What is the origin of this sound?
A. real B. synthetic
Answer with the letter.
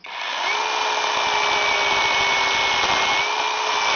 A